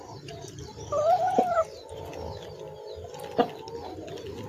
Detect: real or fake real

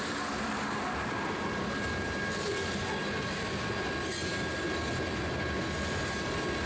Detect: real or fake real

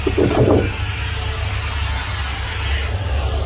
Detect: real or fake real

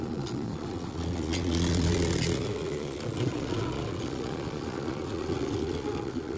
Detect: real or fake fake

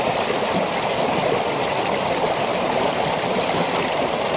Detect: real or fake real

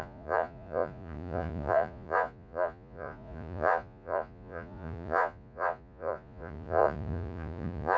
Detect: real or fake fake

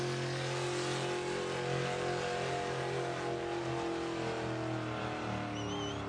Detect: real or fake real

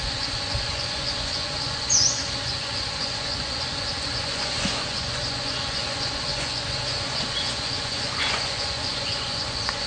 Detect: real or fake fake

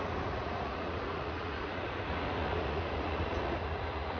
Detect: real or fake fake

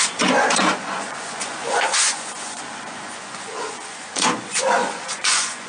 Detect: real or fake fake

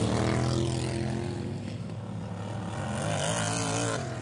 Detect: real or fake real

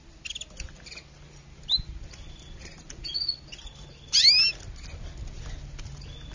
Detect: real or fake real